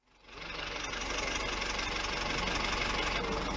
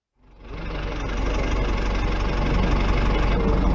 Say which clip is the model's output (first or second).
first